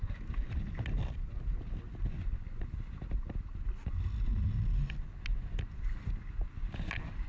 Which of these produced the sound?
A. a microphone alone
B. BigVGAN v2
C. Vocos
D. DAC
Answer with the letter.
A